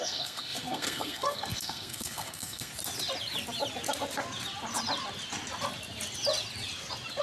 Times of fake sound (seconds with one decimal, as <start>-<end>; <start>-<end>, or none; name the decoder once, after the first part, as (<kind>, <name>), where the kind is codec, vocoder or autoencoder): 0.0-2.7 (codec, SNAC)